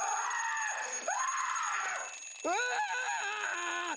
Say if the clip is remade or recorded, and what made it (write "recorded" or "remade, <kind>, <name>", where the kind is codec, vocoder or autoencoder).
recorded